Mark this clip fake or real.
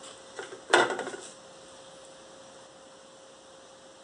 real